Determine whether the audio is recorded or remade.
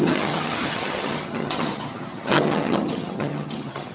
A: remade